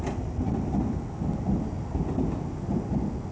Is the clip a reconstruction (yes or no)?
no